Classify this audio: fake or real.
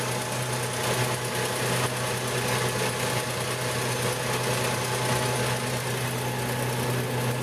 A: real